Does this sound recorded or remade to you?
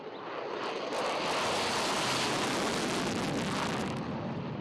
recorded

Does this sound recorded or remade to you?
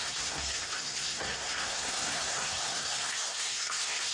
remade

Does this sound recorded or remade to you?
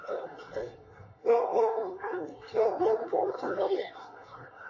remade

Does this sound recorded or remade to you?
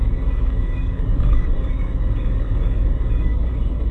remade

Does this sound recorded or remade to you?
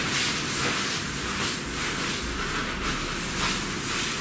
recorded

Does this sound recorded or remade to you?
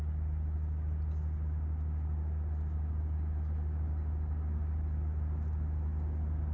recorded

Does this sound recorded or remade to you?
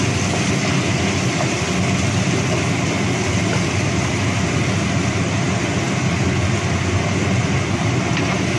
recorded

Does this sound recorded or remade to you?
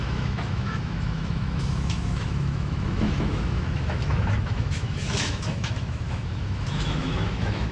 remade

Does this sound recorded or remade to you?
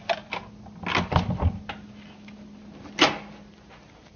recorded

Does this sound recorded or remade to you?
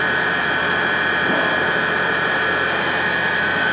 remade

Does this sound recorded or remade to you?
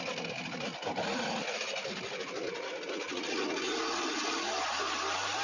recorded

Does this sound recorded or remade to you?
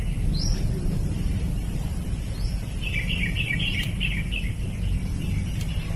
remade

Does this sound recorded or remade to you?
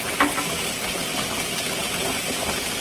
recorded